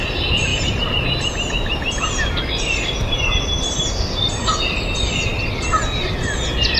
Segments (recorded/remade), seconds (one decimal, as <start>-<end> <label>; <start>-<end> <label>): 0.0-6.8 recorded